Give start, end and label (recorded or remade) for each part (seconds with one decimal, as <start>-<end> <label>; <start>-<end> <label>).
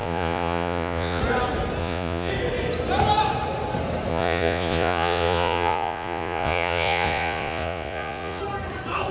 0.0-1.2 remade; 1.2-1.8 recorded; 1.8-2.3 remade; 2.3-4.1 recorded; 4.1-8.4 remade; 8.4-9.1 recorded